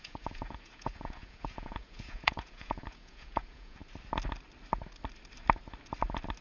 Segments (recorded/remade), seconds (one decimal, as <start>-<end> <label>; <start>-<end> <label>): 0.0-3.8 remade; 3.8-6.4 recorded